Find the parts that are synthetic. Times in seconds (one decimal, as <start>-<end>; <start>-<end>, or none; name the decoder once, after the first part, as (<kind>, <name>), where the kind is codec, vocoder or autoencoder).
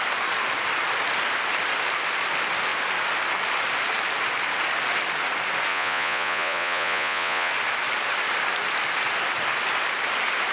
5.7-7.5 (vocoder, Vocos)